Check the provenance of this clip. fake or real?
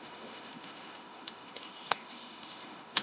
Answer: fake